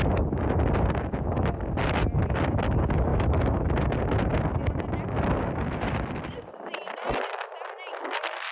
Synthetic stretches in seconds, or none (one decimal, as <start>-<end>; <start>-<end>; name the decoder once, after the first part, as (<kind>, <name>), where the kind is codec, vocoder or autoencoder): 3.1-3.7 (autoencoder, DAC-VAE)